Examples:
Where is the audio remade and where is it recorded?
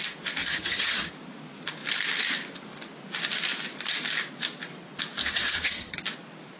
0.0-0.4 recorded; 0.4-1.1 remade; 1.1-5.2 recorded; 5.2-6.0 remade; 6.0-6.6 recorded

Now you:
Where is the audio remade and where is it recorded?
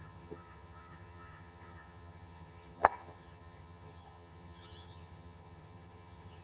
0.0-6.4 remade